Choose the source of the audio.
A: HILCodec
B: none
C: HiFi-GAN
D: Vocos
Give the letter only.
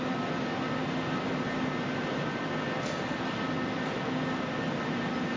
B